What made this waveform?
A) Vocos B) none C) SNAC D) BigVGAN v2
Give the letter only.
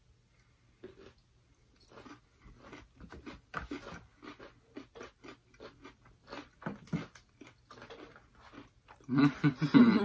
B